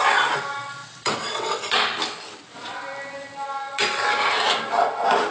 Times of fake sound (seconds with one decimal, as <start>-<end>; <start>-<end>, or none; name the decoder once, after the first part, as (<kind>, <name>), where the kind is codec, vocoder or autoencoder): 0.8-1.6 (vocoder, WaveNeXt)